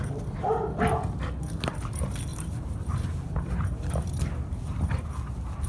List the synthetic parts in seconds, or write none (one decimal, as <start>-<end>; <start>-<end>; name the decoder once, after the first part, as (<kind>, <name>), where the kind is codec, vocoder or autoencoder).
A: 2.3-3.6 (vocoder, BigVGAN v2)